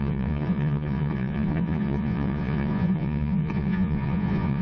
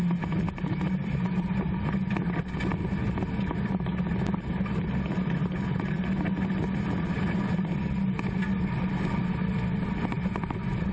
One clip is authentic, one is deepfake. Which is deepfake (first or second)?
first